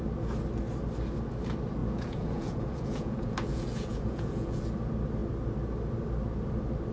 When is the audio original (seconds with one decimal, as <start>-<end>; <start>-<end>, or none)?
0.0-1.8; 4.6-6.9